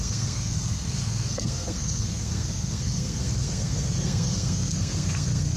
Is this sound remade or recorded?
remade